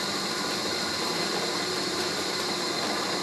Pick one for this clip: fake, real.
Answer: fake